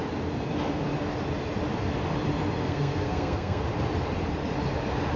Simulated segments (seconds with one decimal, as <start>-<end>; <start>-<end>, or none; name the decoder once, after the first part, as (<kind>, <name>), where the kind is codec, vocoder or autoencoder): 2.6-3.6 (codec, SNAC)